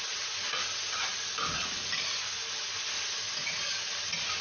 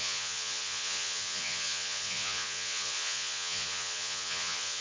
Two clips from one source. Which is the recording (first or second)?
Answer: first